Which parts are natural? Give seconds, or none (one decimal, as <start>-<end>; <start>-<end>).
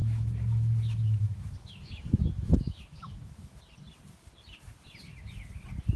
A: 3.6-6.0